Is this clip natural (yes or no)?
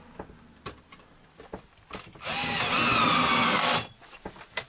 yes